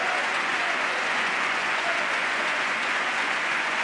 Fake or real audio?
fake